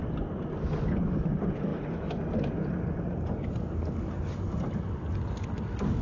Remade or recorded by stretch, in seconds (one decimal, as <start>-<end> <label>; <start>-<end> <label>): 0.0-6.0 recorded